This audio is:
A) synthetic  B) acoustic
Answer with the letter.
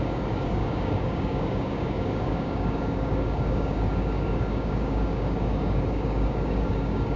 A